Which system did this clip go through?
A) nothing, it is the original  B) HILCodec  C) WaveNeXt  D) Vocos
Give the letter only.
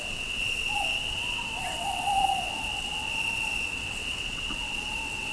C